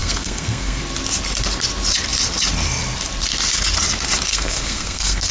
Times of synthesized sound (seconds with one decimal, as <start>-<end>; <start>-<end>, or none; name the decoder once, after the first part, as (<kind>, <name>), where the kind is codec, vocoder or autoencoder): 0.0-0.8 (codec, SNAC); 4.3-5.3